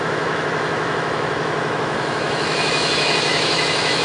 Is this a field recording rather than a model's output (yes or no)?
no